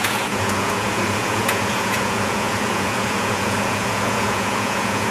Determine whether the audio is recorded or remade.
remade